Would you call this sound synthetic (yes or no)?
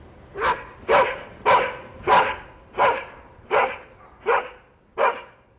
no